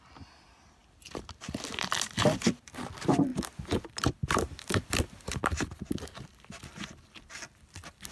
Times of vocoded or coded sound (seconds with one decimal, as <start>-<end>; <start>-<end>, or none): 0.0-3.3; 3.9-5.4; 7.0-8.1

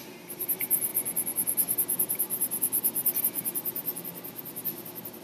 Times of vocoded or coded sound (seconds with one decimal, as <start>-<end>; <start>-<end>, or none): none

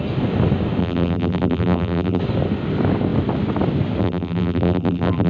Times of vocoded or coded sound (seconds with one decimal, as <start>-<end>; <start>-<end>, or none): 0.8-2.2; 4.0-5.3

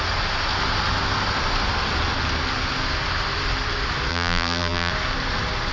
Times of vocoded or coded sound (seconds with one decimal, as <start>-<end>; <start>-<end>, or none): 4.1-4.9